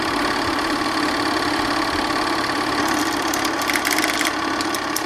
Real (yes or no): yes